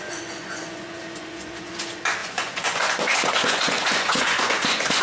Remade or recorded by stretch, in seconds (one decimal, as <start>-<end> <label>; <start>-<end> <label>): 0.0-5.0 remade